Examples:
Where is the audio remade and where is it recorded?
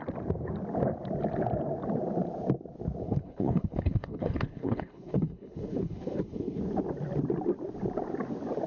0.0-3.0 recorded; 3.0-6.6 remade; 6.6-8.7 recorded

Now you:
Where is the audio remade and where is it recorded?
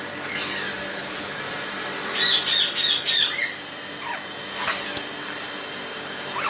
0.0-0.9 recorded; 0.9-1.4 remade; 1.4-6.5 recorded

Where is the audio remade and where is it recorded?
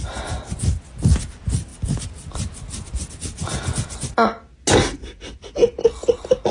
0.0-6.5 recorded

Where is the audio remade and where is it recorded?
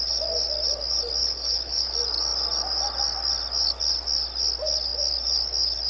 0.0-1.2 recorded; 1.2-1.9 remade; 1.9-5.9 recorded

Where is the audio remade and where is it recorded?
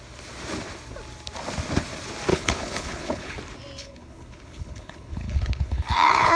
0.0-2.3 recorded; 2.3-3.4 remade; 3.4-3.8 recorded; 3.8-6.4 remade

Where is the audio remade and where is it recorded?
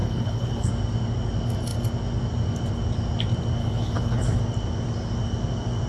0.0-0.7 remade; 0.7-3.6 recorded; 3.6-4.4 remade; 4.4-5.9 recorded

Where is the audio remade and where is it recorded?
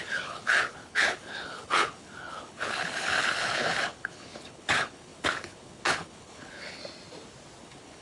0.0-6.8 remade; 6.8-7.6 recorded; 7.6-8.0 remade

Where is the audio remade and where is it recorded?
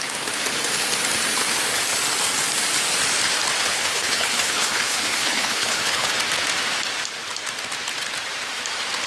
0.0-3.7 recorded; 3.7-6.1 remade; 6.1-9.1 recorded